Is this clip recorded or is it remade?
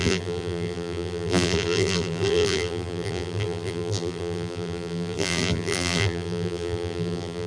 remade